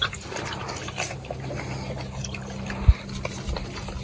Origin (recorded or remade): recorded